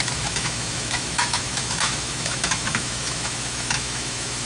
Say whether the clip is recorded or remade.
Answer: remade